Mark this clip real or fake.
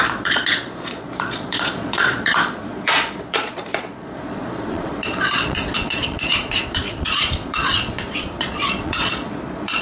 fake